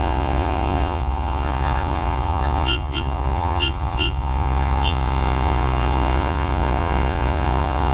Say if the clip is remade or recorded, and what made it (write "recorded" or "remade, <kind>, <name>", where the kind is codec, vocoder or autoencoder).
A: remade, vocoder, Vocos